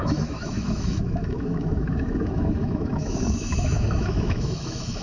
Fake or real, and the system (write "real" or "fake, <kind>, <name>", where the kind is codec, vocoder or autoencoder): fake, autoencoder, DAC-VAE